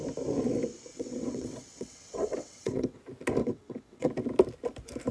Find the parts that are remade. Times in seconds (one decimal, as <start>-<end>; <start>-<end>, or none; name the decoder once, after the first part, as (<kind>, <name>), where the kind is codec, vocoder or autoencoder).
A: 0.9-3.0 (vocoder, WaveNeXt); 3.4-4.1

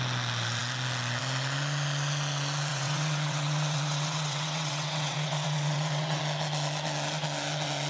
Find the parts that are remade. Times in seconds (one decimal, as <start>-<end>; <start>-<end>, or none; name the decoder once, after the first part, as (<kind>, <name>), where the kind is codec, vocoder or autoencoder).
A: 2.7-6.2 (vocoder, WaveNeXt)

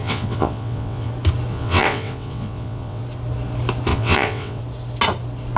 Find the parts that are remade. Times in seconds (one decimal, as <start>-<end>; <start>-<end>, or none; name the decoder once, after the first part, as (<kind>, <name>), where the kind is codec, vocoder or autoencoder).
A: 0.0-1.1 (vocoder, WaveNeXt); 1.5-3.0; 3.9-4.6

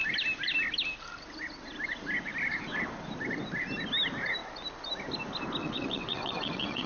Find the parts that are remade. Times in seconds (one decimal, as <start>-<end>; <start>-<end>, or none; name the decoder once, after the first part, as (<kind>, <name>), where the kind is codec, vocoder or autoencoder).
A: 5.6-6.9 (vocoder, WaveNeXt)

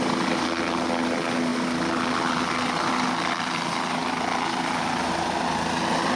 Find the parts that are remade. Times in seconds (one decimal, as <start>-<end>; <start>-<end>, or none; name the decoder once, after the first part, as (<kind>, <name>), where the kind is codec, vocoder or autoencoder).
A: none